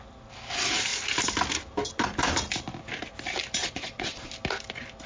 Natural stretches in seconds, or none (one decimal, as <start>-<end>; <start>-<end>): 0.0-3.6; 4.3-5.1